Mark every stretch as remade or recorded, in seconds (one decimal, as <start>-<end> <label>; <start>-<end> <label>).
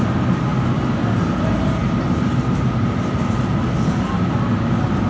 0.0-5.1 recorded